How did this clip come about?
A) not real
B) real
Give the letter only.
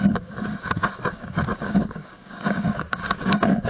A